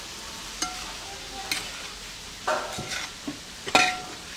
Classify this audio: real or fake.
real